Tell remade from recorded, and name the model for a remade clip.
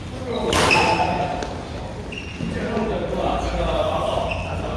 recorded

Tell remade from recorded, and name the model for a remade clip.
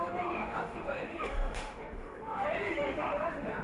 remade, autoencoder, DAC-VAE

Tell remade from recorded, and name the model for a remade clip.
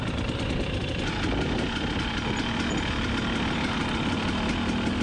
recorded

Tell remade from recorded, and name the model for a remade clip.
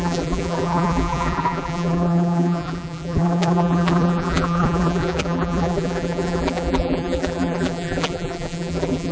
remade, vocoder, BigVGAN v2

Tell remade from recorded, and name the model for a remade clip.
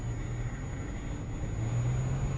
recorded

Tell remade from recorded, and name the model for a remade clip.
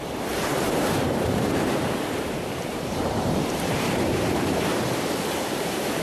remade, vocoder, BigVGAN v2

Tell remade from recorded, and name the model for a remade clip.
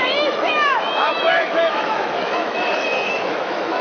remade, autoencoder, DAC-VAE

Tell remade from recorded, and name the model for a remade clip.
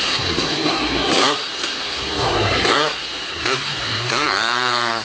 remade, codec, SNAC